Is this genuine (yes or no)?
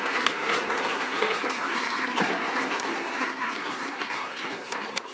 no